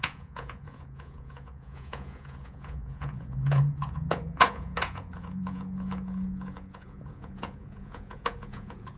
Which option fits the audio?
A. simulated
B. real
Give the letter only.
A